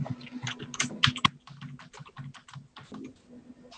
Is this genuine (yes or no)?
yes